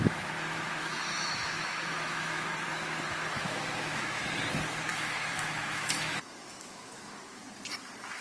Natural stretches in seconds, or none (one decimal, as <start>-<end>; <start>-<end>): 4.2-4.9; 7.4-8.2